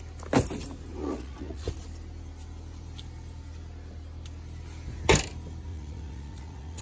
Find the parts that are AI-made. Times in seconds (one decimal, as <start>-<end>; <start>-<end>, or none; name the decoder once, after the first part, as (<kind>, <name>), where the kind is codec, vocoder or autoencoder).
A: 1.0-1.7 (vocoder, Vocos); 5.7-6.8